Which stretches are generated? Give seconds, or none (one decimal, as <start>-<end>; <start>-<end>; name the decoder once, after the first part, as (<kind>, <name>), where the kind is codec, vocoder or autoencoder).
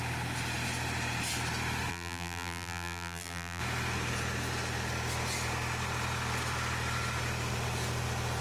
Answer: 1.9-3.6 (vocoder, BigVGAN v2)